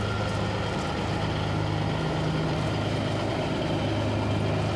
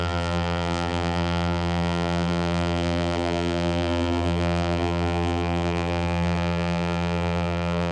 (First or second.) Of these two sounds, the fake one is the second